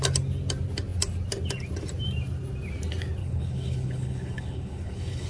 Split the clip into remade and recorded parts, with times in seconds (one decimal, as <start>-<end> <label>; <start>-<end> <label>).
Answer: 0.0-3.2 recorded; 3.2-5.3 remade